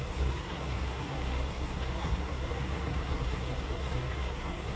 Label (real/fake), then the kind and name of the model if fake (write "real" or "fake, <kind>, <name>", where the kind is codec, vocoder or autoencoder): fake, codec, SNAC